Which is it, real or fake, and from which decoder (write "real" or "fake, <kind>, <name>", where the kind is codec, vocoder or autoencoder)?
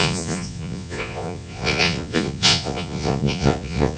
fake, vocoder, Vocos